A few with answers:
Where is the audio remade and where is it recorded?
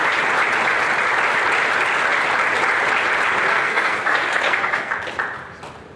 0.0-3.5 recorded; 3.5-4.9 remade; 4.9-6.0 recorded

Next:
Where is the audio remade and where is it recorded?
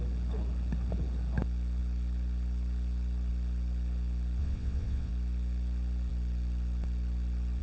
0.0-4.4 recorded; 4.4-5.1 remade; 5.1-7.6 recorded